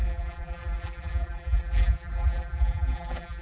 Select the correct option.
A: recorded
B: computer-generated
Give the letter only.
B